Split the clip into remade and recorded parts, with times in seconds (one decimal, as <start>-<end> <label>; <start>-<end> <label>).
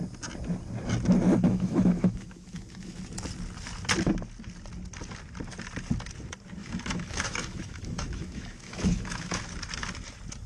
0.0-1.3 recorded; 1.3-3.0 remade; 3.0-6.6 recorded; 6.6-9.4 remade; 9.4-10.5 recorded